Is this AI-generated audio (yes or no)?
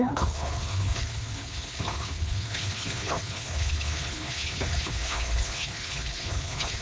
yes